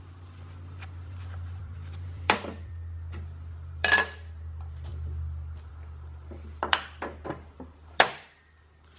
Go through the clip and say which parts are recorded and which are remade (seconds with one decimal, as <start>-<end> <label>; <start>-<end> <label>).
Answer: 0.0-4.9 remade; 4.9-5.7 recorded; 5.7-9.0 remade